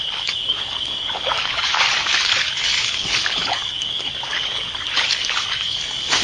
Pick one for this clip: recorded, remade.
remade